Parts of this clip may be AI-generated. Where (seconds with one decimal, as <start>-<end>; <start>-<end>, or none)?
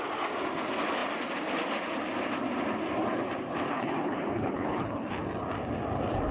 3.7-5.1